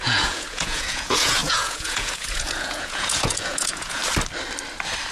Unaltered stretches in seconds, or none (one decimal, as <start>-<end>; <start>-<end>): 4.0-5.1